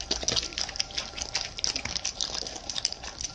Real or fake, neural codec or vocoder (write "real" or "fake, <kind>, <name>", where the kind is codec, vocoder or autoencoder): real